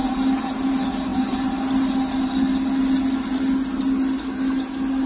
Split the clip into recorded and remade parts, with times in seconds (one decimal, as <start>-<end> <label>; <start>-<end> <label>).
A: 0.0-5.1 recorded